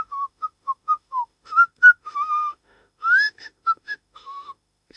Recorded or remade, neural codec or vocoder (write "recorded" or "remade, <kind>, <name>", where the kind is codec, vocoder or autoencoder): remade, autoencoder, DAC-VAE